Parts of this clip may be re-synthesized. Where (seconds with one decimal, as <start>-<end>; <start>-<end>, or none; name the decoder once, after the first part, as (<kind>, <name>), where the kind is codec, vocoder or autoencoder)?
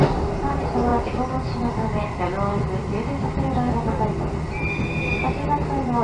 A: none